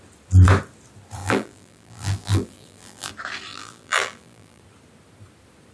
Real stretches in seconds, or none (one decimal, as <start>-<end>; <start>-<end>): 0.0-1.2; 3.1-3.5; 4.6-5.7